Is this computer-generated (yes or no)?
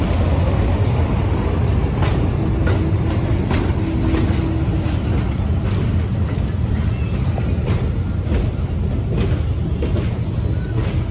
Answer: no